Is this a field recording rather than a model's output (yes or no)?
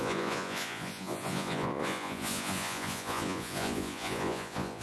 no